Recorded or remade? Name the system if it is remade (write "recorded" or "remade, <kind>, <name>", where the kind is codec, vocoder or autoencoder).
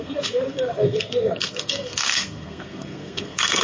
remade, codec, SNAC